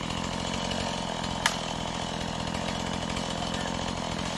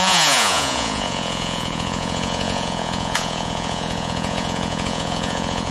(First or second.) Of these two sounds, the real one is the first